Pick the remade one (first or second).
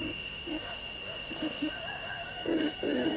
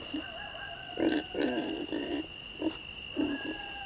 first